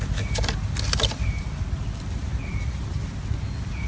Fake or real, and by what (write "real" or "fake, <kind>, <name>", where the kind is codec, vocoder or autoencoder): real